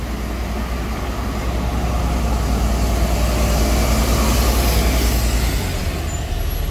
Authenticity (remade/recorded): recorded